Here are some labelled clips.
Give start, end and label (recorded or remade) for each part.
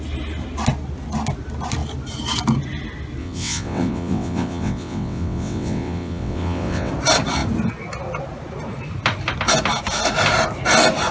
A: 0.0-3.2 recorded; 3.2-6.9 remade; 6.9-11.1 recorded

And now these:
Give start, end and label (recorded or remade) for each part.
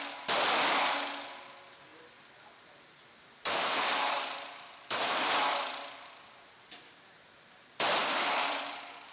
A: 0.0-1.9 recorded; 1.9-5.3 remade; 5.3-8.0 recorded; 8.0-8.7 remade; 8.7-9.1 recorded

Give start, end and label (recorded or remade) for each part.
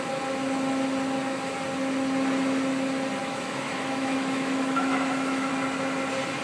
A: 0.0-3.2 recorded; 3.2-5.5 remade; 5.5-6.4 recorded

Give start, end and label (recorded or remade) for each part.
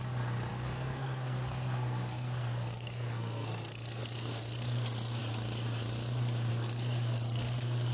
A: 0.0-0.5 recorded; 0.5-5.2 remade; 5.2-6.5 recorded; 6.5-7.9 remade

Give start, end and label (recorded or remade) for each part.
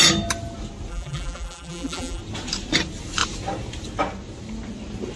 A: 0.0-0.9 recorded; 0.9-2.2 remade; 2.2-5.2 recorded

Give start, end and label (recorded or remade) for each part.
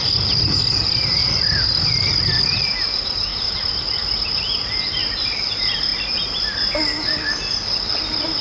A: 0.0-1.2 recorded; 1.2-2.4 remade; 2.4-3.3 recorded; 3.3-4.4 remade; 4.4-5.0 recorded; 5.0-5.5 remade; 5.5-8.4 recorded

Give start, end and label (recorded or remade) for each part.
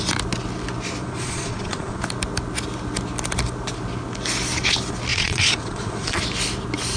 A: 0.0-1.0 recorded; 1.0-2.0 remade; 2.0-5.1 recorded; 5.1-6.2 remade; 6.2-7.0 recorded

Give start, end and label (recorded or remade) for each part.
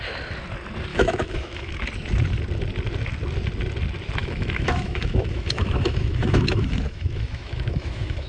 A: 0.0-0.9 recorded; 0.9-1.7 remade; 1.7-4.2 recorded; 4.2-8.3 remade